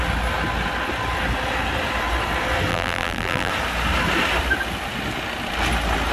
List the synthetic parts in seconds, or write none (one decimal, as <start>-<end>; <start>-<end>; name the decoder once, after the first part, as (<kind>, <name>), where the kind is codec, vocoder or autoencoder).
2.7-3.5 (vocoder, BigVGAN v2)